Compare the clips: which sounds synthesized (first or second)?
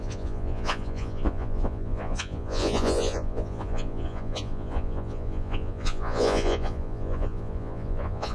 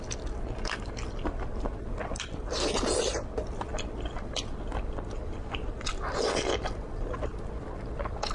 first